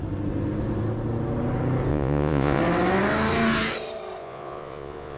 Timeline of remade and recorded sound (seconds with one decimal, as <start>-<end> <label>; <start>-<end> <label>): 0.0-1.9 recorded; 1.9-2.6 remade; 2.6-4.2 recorded; 4.2-5.2 remade